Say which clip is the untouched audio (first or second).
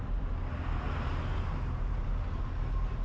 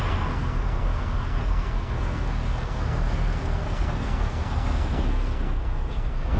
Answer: first